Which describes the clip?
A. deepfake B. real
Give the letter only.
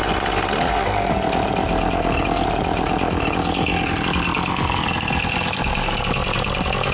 B